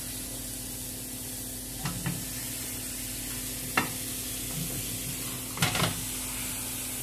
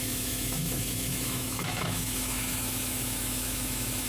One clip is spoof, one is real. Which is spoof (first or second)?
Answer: second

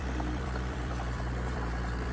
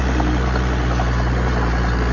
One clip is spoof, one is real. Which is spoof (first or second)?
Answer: first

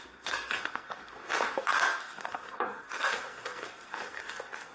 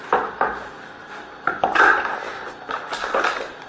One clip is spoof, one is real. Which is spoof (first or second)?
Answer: first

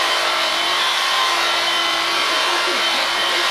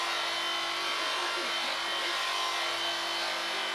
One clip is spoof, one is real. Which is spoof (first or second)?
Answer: first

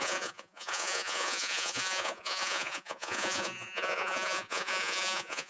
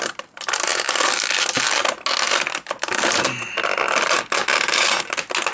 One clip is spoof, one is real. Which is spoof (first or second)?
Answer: first